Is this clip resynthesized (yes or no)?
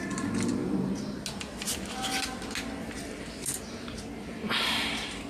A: no